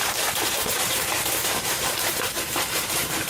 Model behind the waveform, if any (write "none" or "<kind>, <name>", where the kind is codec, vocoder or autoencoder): vocoder, BigVGAN v2